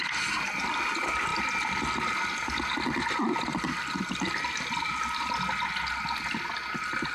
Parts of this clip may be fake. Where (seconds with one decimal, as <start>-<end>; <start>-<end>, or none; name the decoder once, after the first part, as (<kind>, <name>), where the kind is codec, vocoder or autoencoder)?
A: none